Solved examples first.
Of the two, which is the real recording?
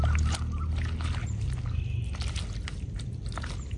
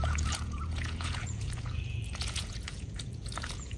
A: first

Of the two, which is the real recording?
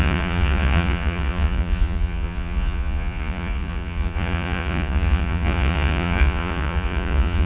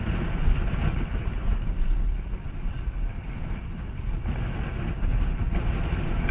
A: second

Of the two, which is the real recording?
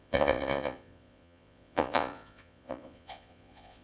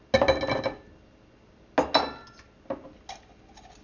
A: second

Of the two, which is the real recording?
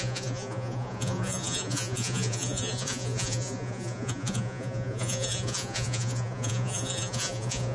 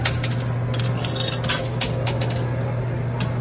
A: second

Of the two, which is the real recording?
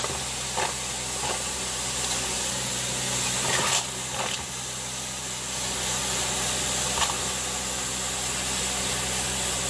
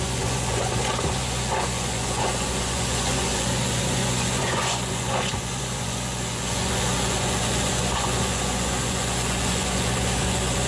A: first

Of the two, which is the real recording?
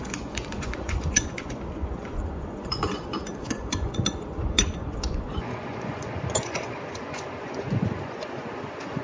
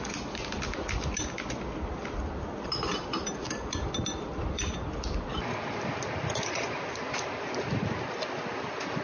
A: second